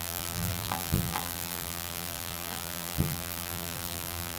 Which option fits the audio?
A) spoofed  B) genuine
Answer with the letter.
A